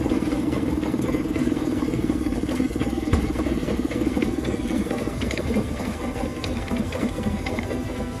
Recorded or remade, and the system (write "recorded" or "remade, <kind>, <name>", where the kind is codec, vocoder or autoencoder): remade, codec, SNAC